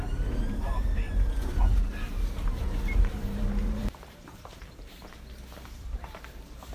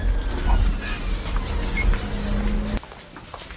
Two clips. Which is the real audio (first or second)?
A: second